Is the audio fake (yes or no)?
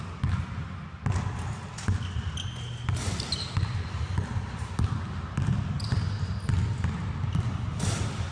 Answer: no